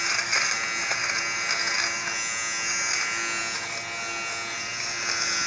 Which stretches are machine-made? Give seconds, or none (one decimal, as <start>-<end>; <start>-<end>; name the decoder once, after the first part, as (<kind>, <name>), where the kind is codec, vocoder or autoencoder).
none